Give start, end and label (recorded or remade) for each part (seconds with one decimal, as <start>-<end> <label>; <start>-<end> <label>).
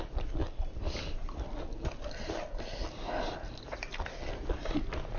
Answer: 0.0-5.2 recorded